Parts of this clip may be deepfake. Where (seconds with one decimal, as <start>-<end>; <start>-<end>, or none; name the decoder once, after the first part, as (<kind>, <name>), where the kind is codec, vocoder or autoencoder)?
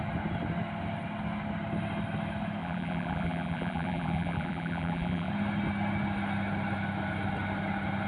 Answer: 2.6-5.3 (vocoder, BigVGAN v2)